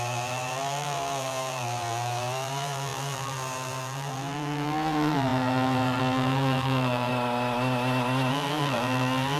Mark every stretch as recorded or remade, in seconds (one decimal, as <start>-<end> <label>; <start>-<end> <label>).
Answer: 0.0-7.1 remade; 7.1-8.3 recorded; 8.3-9.4 remade